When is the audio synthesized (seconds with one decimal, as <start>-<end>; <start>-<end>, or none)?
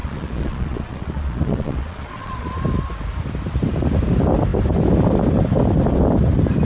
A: 0.0-2.6